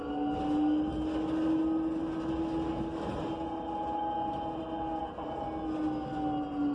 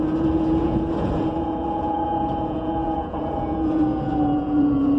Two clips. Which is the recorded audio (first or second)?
first